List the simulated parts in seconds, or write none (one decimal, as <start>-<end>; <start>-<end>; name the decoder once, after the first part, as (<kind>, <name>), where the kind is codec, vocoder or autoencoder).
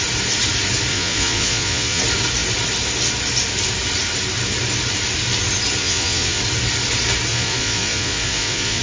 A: 0.9-2.0 (vocoder, Vocos); 5.8-6.4; 7.3-8.8